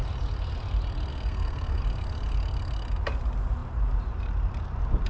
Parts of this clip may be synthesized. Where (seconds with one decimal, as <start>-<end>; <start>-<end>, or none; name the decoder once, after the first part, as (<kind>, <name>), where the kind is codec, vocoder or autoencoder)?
1.1-1.8 (codec, SNAC)